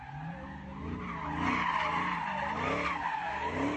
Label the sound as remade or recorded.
recorded